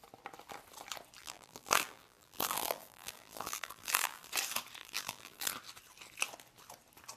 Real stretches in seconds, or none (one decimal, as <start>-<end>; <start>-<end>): 0.0-1.2; 4.3-4.8; 5.5-7.2